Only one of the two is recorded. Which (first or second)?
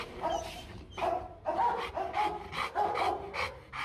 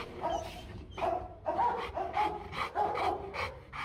first